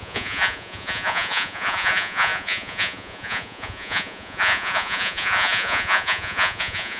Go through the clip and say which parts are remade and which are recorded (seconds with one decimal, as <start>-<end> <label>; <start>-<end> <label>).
0.0-7.0 remade